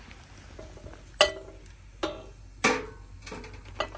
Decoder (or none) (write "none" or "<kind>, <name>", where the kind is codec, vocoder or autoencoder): none